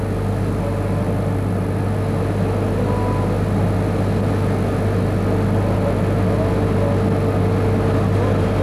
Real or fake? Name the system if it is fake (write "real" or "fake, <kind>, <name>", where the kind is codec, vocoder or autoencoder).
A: real